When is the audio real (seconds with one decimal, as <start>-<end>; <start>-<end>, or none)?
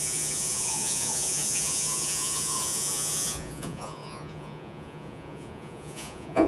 none